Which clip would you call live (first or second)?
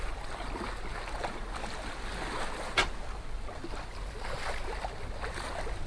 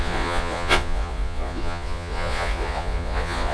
first